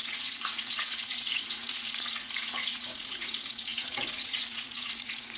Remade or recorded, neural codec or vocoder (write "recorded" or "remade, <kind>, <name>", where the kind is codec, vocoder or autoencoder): remade, vocoder, Vocos